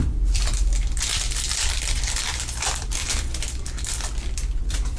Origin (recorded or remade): remade